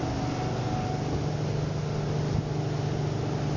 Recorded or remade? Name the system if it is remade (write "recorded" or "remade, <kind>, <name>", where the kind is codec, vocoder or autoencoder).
recorded